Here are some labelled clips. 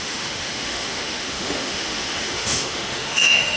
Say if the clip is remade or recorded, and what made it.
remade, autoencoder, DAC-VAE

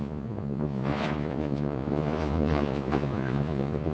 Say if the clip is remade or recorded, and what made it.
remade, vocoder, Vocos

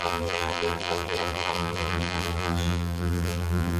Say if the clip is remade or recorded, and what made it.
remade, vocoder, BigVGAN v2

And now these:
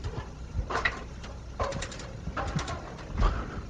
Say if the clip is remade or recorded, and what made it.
recorded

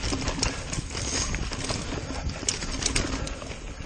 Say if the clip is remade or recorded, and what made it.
recorded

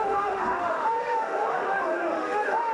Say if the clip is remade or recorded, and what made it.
remade, autoencoder, DAC-VAE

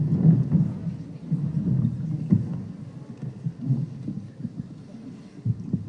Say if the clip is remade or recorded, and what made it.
recorded